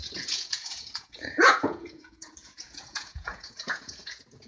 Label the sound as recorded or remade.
remade